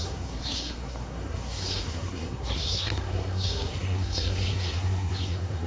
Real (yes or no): no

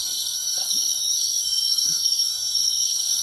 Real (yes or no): no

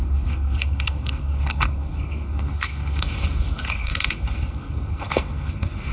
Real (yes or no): no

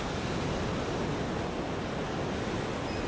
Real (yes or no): yes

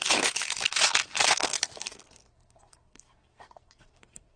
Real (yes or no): no